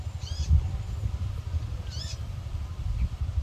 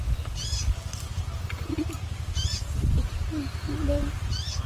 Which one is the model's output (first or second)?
first